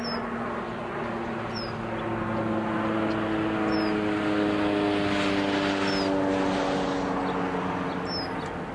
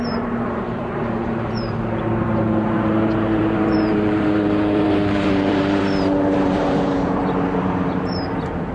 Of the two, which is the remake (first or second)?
second